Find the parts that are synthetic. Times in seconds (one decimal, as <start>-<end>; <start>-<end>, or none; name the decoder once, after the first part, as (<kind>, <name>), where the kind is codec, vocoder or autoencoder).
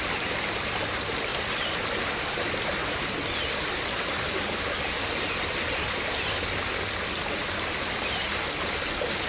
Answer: none